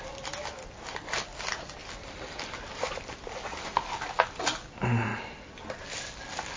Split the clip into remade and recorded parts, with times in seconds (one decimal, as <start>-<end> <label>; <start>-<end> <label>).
0.0-6.6 recorded